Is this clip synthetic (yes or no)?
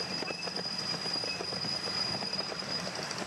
no